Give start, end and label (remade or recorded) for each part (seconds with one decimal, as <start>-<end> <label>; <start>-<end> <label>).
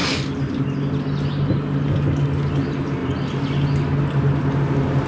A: 0.0-5.1 recorded